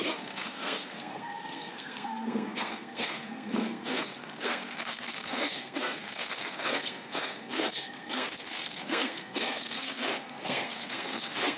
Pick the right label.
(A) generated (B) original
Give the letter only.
A